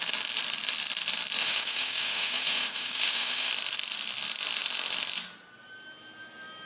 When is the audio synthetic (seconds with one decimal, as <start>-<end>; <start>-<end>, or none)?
1.4-3.5